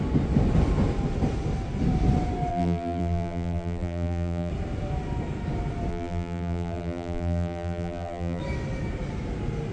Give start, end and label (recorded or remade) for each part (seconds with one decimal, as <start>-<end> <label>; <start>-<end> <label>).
0.0-2.5 recorded; 2.5-4.5 remade; 4.5-5.9 recorded; 5.9-8.4 remade; 8.4-9.7 recorded